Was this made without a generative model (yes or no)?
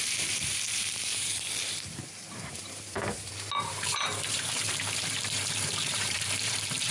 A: no